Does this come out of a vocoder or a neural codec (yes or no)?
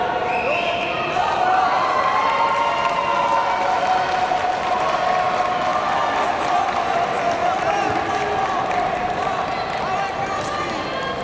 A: no